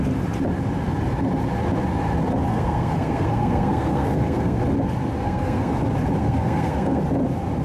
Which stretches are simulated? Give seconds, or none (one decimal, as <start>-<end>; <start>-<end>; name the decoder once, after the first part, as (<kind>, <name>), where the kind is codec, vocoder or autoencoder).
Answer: 2.5-4.6 (codec, SNAC); 5.2-5.8; 6.2-7.0